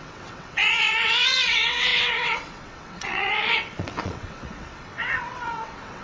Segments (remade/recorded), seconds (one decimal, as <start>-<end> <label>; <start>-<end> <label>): 0.0-6.0 remade

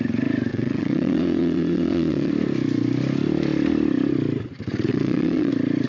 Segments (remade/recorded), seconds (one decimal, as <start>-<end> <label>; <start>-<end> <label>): 0.0-0.5 recorded; 0.5-2.3 remade; 2.3-4.9 recorded; 4.9-5.5 remade; 5.5-5.9 recorded